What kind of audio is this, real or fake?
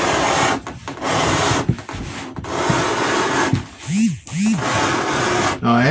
real